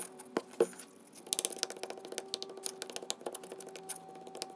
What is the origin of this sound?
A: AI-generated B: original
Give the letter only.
B